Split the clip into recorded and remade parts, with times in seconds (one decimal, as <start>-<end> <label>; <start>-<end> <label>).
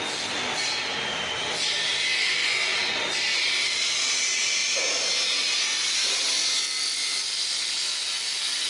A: 0.0-2.4 recorded; 2.4-3.0 remade; 3.0-8.7 recorded